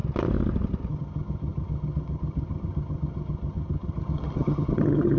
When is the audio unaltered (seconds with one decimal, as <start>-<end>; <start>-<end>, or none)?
0.0-0.9